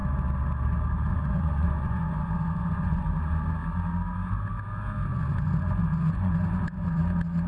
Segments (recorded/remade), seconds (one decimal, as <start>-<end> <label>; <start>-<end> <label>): 0.0-1.1 recorded; 1.1-3.0 remade; 3.0-5.1 recorded; 5.1-7.0 remade; 7.0-7.5 recorded